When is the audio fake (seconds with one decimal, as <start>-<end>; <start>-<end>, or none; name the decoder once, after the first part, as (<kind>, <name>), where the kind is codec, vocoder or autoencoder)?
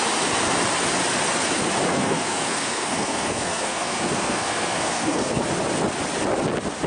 1.9-5.3 (codec, SNAC)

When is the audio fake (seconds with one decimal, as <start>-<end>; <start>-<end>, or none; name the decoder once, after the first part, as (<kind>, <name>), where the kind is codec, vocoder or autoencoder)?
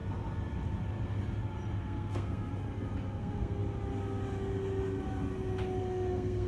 1.8-2.5 (codec, SNAC); 3.2-3.6; 5.8-6.5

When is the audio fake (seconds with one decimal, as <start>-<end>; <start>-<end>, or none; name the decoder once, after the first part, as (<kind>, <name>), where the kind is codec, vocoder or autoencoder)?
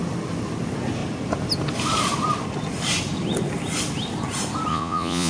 4.7-5.3 (vocoder, Vocos)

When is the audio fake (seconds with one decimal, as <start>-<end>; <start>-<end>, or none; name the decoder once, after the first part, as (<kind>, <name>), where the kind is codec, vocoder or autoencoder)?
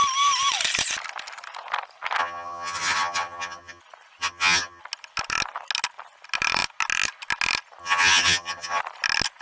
2.2-3.8 (vocoder, HiFi-GAN); 4.2-4.8; 7.8-8.8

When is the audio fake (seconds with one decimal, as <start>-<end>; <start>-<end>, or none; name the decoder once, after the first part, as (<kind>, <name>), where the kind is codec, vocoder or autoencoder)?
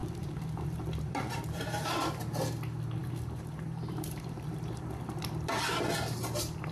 0.0-2.2 (vocoder, BigVGAN v2); 3.0-4.9